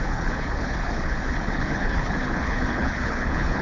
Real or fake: fake